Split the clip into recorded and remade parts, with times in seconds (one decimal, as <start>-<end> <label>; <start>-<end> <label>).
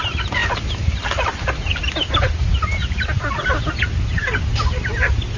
0.0-5.4 recorded